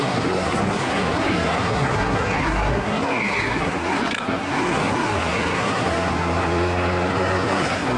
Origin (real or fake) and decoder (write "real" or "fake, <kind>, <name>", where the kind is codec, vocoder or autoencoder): fake, codec, SNAC